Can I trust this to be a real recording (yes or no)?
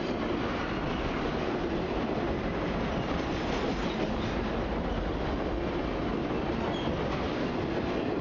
yes